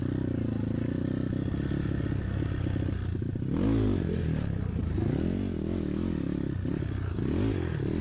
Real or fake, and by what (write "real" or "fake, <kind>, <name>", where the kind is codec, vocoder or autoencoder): real